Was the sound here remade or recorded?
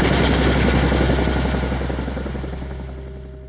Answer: recorded